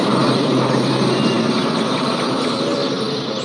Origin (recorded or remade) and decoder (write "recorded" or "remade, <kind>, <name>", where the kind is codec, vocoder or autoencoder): recorded